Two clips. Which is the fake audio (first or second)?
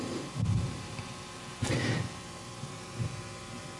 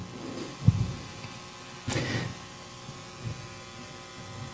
first